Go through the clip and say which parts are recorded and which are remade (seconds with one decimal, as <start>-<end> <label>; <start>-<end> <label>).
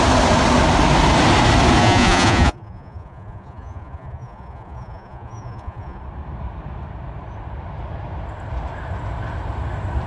0.0-1.8 recorded; 1.8-6.0 remade; 6.0-10.1 recorded